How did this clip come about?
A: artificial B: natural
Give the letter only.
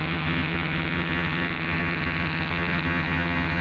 A